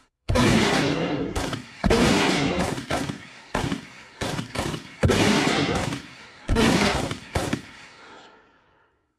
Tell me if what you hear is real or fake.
fake